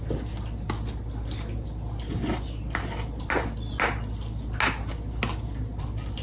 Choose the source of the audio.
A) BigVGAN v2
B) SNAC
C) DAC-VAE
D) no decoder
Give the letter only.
D